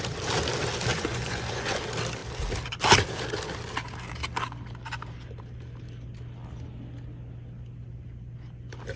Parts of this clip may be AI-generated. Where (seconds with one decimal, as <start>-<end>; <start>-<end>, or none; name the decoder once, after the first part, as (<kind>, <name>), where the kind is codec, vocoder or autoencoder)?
0.9-1.8 (vocoder, Vocos)